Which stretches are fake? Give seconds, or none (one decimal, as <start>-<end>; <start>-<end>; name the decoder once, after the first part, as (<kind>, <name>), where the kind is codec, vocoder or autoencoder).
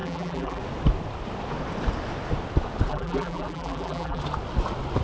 0.0-0.6 (vocoder, BigVGAN v2); 2.9-4.2